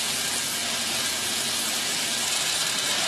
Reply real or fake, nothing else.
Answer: real